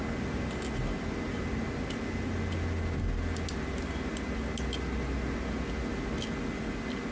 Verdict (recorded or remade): recorded